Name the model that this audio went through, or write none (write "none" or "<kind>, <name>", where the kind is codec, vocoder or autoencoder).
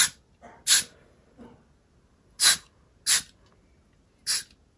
none